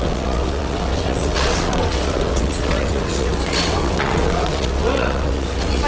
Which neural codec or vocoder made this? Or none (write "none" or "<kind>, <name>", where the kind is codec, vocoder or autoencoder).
vocoder, WaveNeXt